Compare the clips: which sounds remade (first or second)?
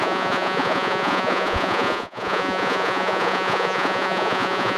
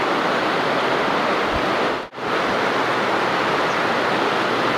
first